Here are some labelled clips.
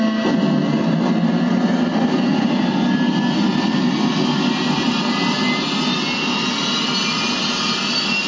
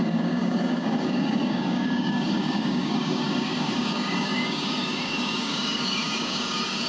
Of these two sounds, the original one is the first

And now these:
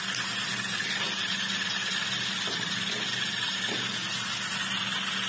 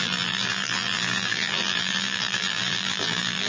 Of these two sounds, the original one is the first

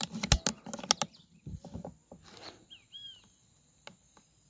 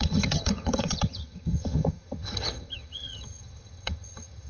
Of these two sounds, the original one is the first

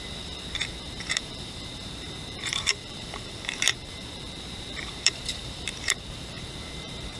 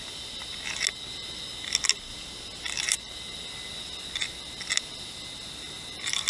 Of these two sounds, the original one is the second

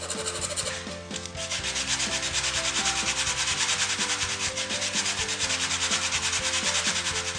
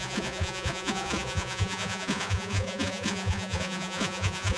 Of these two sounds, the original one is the first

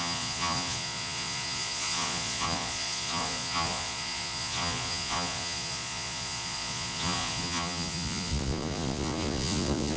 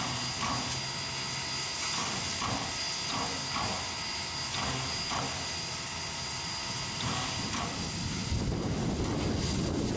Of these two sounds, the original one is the second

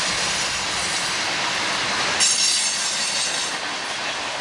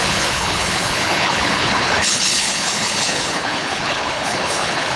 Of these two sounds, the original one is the first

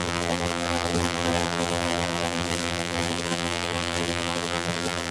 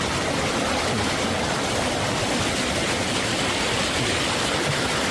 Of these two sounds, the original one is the second